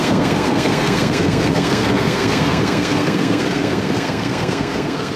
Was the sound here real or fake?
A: fake